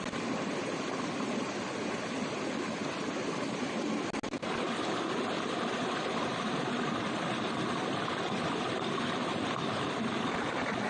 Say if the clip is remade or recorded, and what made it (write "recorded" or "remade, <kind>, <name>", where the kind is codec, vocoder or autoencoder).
recorded